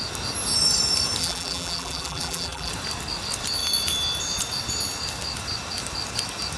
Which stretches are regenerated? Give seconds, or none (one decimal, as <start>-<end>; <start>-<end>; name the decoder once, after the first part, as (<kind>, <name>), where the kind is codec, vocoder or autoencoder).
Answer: 1.2-2.7 (vocoder, BigVGAN v2)